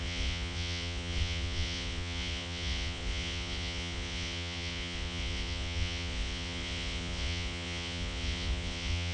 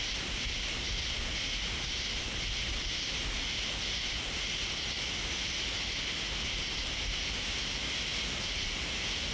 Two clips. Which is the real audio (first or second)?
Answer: second